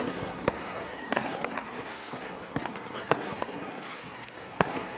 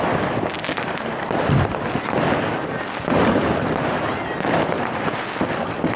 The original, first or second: second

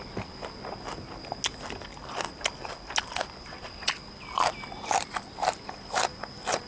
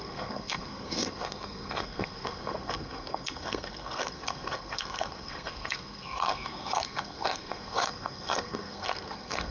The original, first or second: first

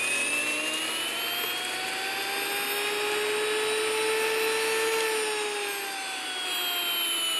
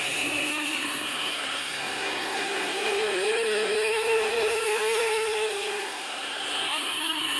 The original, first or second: first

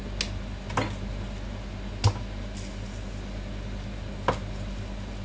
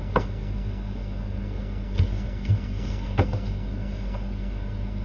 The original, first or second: first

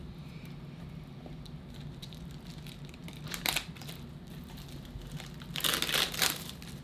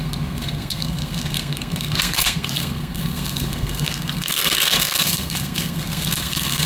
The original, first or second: first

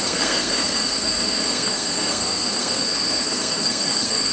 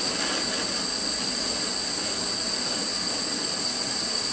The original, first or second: second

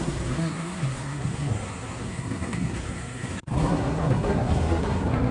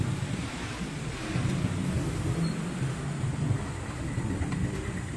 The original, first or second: second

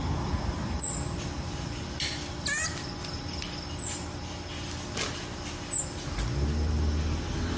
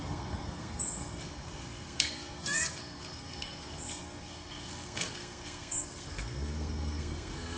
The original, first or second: first